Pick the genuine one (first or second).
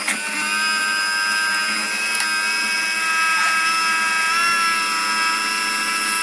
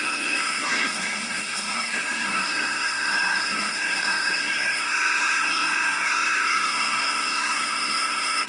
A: first